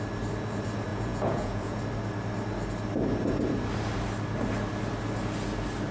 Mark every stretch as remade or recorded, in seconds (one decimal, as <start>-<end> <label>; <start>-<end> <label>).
0.0-0.9 recorded; 0.9-1.8 remade; 1.8-5.9 recorded